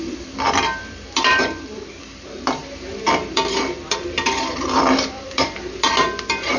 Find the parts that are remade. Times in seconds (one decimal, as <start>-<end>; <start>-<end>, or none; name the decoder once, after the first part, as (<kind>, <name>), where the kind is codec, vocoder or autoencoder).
0.0-6.6 (vocoder, BigVGAN v2)